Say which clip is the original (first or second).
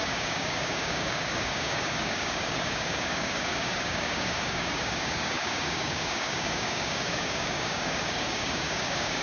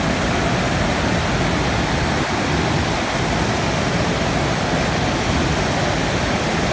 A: second